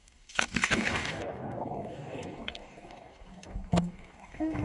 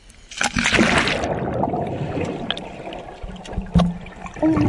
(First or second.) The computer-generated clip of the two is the first